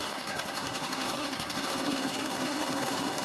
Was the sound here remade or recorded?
remade